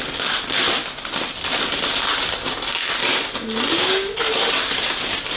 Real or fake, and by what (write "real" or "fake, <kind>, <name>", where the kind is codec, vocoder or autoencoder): real